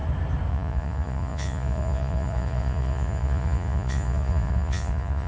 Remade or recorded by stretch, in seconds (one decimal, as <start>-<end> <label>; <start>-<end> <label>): 0.0-0.5 recorded; 0.5-5.3 remade